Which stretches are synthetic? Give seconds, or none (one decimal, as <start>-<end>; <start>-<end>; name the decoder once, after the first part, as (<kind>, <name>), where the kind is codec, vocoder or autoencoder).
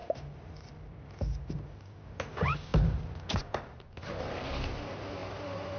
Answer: none